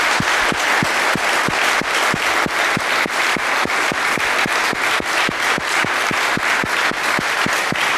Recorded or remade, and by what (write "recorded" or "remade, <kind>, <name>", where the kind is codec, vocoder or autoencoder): recorded